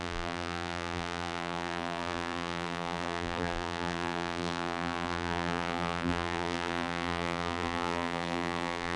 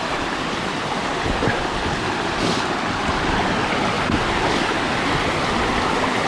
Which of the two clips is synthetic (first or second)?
first